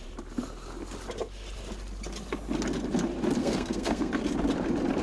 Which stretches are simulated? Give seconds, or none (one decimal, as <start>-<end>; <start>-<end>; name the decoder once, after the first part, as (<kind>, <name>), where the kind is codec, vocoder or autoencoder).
3.4-4.1 (codec, SNAC)